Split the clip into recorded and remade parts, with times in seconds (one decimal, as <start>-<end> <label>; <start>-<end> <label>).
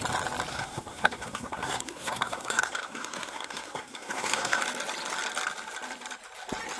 0.0-0.5 recorded; 0.5-4.6 remade; 4.6-6.8 recorded